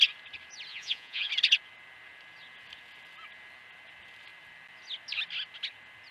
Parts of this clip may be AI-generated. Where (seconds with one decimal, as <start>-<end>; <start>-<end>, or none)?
0.7-1.3